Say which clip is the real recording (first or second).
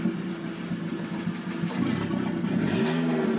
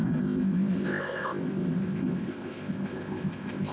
first